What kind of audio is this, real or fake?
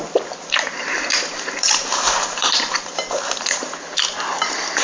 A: fake